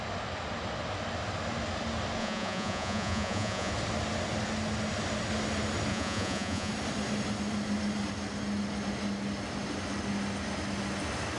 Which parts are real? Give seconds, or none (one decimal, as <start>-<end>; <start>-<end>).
0.0-2.2; 3.7-5.9; 6.7-11.4